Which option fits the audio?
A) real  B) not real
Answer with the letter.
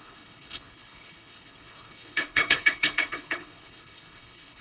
B